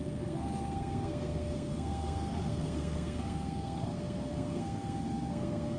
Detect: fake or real fake